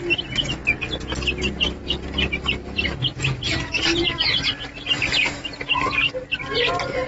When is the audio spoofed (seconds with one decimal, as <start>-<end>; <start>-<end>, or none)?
1.8-6.1